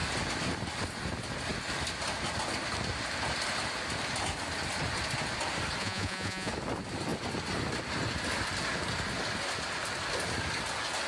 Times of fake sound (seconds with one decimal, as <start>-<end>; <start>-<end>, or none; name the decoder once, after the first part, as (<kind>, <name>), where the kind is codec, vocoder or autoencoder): 5.8-6.5 (vocoder, Vocos)